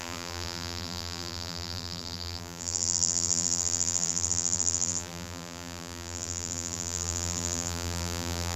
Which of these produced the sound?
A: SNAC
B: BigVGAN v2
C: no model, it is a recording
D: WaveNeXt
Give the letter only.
B